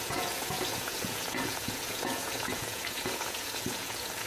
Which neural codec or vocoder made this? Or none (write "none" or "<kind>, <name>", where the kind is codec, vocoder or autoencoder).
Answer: vocoder, Vocos